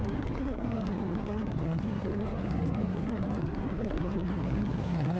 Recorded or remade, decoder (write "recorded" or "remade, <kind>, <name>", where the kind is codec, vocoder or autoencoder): remade, codec, SNAC